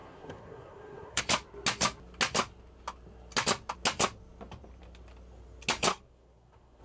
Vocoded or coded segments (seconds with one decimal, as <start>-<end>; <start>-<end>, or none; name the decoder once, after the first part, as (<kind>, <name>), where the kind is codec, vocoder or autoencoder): 0.0-1.2 (codec, SNAC); 5.9-6.8